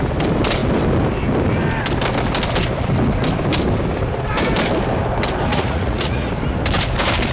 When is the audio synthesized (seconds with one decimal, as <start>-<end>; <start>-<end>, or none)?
5.5-6.3